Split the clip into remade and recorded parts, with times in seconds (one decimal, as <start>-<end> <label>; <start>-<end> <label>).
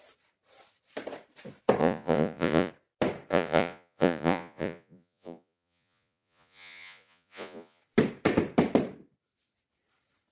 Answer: 0.0-1.8 recorded; 1.8-2.7 remade; 2.7-3.3 recorded; 3.3-7.8 remade; 7.8-10.3 recorded